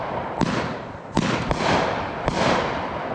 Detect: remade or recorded recorded